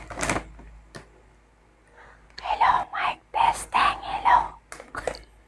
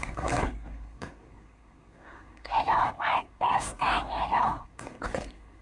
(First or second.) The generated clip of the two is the second